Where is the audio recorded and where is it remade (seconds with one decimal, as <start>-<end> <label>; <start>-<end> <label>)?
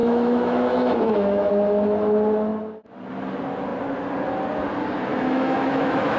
0.0-1.5 remade; 1.5-5.1 recorded; 5.1-6.2 remade